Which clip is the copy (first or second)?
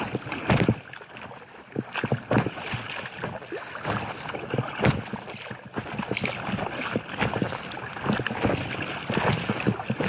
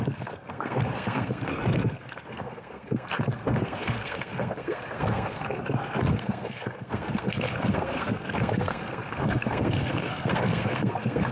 second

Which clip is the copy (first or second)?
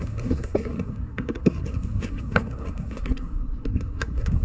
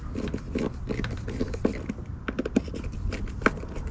first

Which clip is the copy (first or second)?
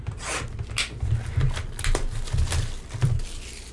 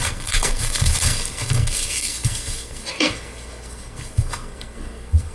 second